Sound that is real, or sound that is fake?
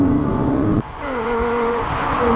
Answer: fake